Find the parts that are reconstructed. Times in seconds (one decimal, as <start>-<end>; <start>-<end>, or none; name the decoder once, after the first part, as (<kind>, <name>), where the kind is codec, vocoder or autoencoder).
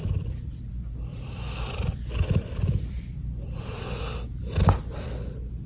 0.0-0.7 (vocoder, BigVGAN v2); 1.1-4.0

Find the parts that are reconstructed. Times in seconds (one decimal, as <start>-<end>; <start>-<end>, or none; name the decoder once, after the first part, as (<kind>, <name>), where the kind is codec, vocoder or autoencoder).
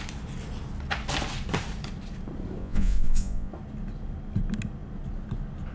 2.6-3.5 (vocoder, Vocos)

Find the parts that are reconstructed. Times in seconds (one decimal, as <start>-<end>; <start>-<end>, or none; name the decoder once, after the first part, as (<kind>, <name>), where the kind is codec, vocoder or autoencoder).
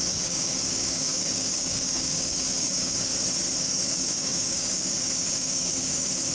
0.0-3.1 (codec, DAC); 3.6-6.3